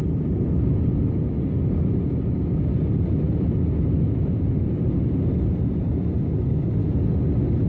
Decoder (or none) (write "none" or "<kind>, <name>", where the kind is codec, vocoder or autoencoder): none